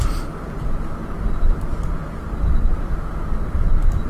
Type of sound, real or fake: real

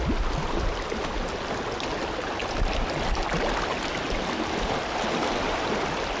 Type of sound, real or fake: real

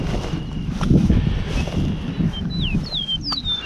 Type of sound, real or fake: real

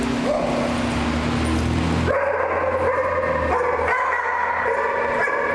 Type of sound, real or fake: real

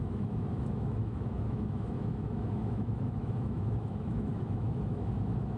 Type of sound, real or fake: fake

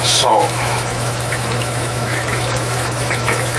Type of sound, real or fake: fake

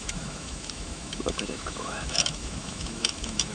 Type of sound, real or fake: fake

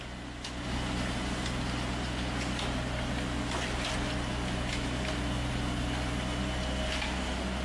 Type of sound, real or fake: real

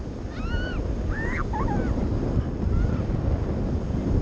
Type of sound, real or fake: real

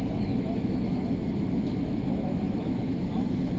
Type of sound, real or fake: fake